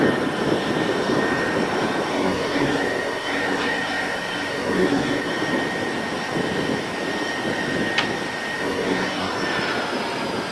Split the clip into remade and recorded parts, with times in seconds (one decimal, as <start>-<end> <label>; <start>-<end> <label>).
0.0-2.1 recorded; 2.1-5.3 remade; 5.3-8.5 recorded; 8.5-9.3 remade; 9.3-10.5 recorded